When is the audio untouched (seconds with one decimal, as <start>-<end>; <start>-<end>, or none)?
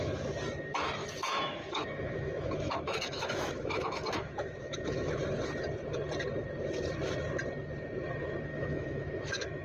0.0-1.0; 5.2-8.5